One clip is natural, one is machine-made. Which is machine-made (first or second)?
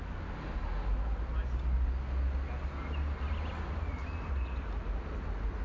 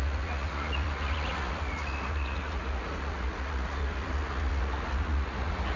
second